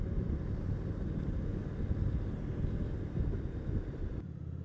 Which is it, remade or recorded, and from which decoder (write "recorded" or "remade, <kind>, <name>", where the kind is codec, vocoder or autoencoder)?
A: recorded